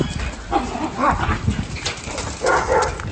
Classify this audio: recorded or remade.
recorded